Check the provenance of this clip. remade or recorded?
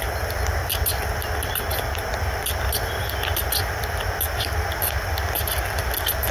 recorded